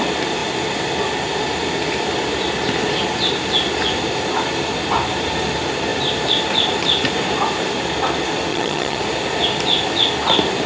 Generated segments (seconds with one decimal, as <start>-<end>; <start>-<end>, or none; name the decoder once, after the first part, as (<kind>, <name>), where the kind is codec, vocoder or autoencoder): 8.5-9.0 (vocoder, HiFi-GAN)